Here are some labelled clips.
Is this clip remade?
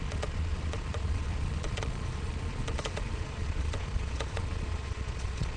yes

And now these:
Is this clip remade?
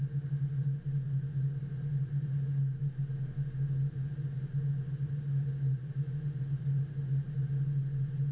no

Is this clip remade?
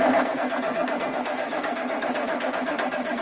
yes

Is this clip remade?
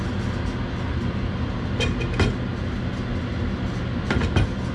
no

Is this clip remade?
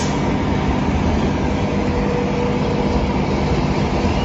no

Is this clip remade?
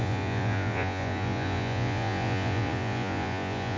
yes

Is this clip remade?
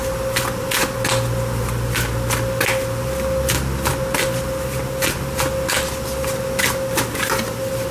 no